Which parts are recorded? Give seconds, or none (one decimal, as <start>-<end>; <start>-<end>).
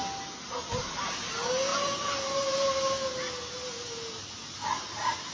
0.0-5.3